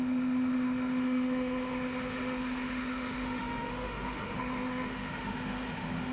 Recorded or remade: remade